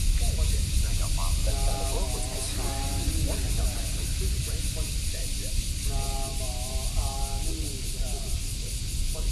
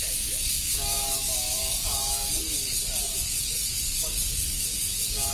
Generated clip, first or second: second